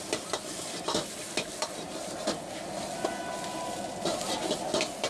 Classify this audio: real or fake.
real